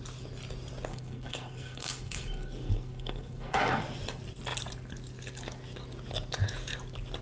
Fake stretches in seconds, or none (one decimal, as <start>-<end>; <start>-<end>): 0.9-3.8